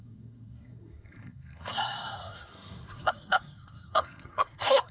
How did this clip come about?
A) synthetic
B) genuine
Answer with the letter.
A